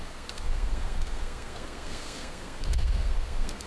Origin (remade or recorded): remade